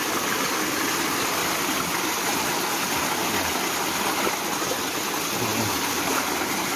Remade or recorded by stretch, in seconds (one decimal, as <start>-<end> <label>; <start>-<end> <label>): 0.0-6.8 recorded